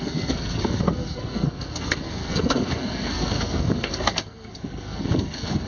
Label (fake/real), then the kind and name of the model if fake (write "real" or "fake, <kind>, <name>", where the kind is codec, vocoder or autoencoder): fake, codec, SNAC